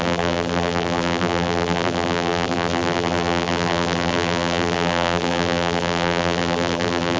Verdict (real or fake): fake